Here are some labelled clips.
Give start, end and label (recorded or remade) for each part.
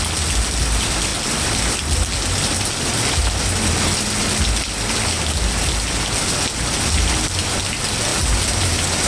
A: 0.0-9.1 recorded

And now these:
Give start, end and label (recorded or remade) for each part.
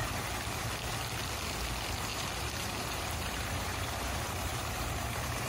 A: 0.0-0.7 remade; 0.7-2.1 recorded; 2.1-5.5 remade